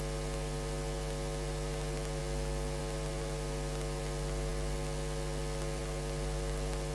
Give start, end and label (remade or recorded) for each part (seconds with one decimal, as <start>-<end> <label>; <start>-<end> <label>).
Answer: 0.0-6.9 recorded

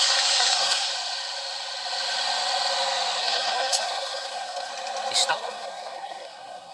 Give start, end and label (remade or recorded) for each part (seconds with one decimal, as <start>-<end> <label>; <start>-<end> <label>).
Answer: 0.0-0.9 remade; 0.9-3.2 recorded; 3.2-4.7 remade; 4.7-5.3 recorded; 5.3-6.7 remade